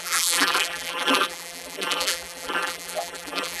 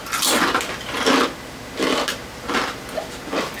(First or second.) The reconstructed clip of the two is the first